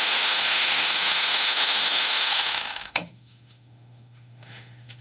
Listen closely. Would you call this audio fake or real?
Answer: fake